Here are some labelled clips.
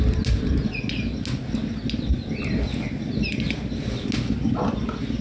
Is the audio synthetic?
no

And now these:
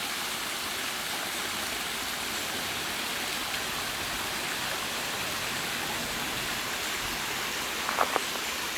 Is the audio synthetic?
no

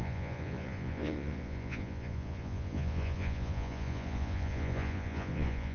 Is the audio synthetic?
yes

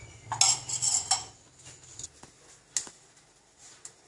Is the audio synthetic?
no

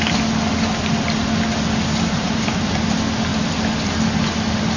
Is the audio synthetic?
no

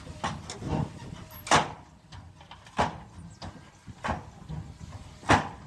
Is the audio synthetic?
no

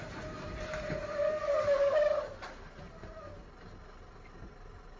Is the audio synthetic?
no